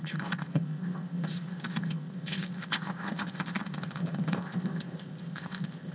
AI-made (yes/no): yes